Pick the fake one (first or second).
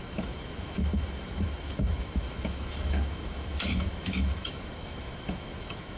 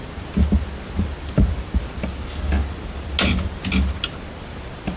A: first